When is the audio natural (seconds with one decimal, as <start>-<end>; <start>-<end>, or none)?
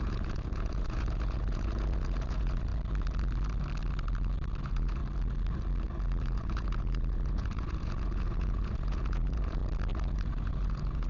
2.7-4.6; 5.0-6.2; 9.6-10.1